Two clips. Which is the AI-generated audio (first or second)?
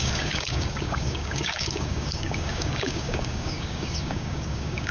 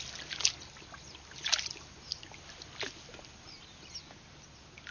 first